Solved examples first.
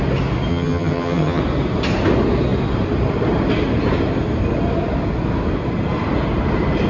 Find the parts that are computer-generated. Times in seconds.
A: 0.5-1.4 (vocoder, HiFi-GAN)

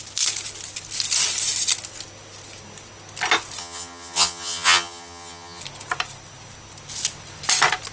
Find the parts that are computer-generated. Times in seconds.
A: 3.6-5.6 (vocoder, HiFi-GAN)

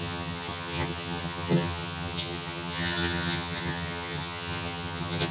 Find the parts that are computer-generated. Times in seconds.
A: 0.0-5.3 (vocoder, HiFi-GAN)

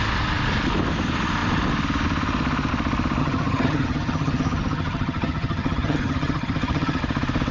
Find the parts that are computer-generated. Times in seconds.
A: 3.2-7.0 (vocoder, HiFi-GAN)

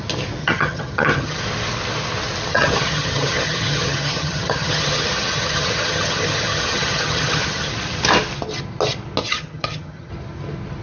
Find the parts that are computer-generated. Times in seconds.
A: 0.4-1.4 (vocoder, HiFi-GAN); 2.5-7.7; 9.2-10.1

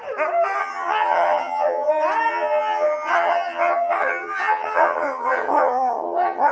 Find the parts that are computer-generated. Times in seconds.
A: 0.6-1.9 (vocoder, HiFi-GAN); 2.3-6.5

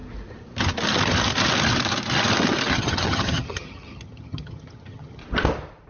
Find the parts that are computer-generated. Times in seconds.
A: 2.7-5.2 (vocoder, HiFi-GAN)

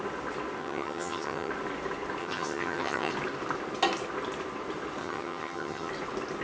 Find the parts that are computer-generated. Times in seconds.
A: 0.6-1.5 (vocoder, HiFi-GAN); 2.2-3.1; 5.0-5.9